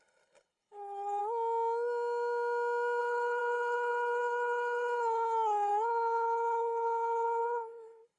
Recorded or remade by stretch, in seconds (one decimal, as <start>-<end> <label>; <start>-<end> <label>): 0.0-1.2 remade; 1.2-3.0 recorded; 3.0-8.2 remade